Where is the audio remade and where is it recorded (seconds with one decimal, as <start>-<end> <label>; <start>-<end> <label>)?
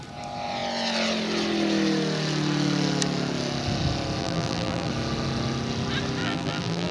0.0-4.2 recorded; 4.2-4.9 remade; 4.9-6.2 recorded; 6.2-6.9 remade